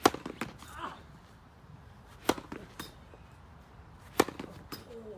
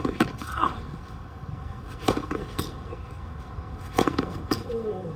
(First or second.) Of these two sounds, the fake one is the second